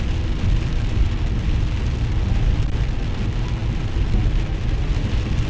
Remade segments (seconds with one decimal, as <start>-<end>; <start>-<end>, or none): none